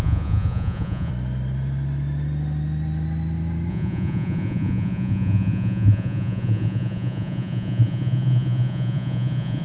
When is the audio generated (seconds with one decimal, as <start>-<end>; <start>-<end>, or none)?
0.0-1.1; 3.7-9.6